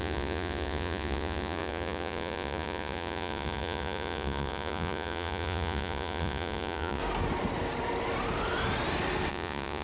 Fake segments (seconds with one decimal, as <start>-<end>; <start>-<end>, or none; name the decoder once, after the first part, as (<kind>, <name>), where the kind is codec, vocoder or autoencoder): 0.0-7.0 (vocoder, Vocos); 9.3-9.8